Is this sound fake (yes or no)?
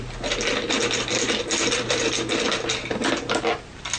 no